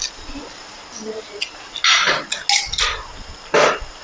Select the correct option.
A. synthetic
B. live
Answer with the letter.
B